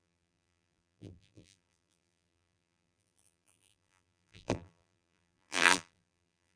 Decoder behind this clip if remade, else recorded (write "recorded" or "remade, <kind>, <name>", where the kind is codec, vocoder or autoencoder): remade, vocoder, BigVGAN v2